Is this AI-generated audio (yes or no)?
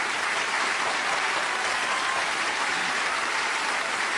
yes